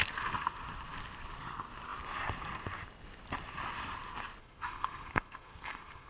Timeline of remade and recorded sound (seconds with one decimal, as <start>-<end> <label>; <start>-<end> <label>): 0.0-4.4 recorded; 4.4-6.1 remade